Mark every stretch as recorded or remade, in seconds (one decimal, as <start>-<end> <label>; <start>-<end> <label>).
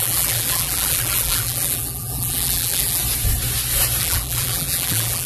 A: 0.0-3.0 remade; 3.0-4.0 recorded; 4.0-5.3 remade